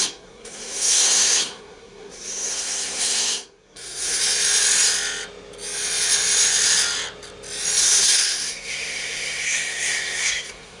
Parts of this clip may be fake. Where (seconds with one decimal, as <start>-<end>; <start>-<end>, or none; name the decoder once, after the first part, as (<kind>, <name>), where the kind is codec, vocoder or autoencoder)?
0.0-4.2 (codec, SNAC); 7.8-10.8